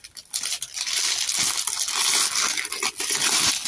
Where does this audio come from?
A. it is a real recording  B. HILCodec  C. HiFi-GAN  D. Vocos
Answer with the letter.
A